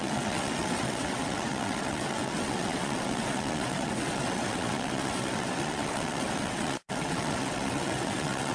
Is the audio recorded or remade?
remade